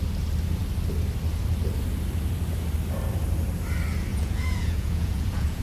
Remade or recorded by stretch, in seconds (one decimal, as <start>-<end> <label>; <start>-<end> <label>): 0.0-4.1 recorded; 4.1-5.6 remade